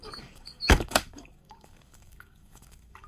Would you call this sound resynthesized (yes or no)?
yes